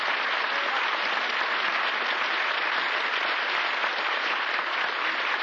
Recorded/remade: recorded